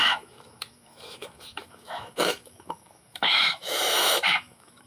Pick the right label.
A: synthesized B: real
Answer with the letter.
A